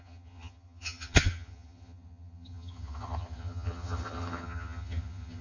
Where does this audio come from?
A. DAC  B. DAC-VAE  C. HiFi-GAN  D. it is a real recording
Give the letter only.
C